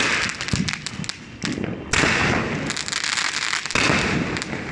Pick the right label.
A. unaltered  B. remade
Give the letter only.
A